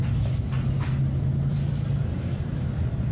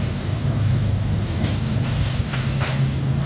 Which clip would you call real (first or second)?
first